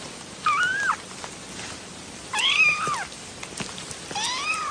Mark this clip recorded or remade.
recorded